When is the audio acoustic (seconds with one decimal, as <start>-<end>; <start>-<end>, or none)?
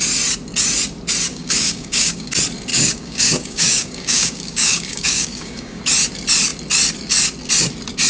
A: 0.0-1.3; 2.3-2.7; 5.8-8.1